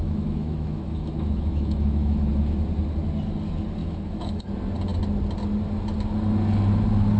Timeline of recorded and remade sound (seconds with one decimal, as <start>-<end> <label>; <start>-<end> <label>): 0.0-2.3 remade; 2.3-3.8 recorded; 3.8-4.4 remade; 4.4-7.2 recorded